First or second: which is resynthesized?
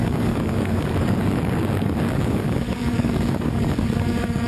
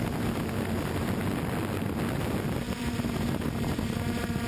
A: first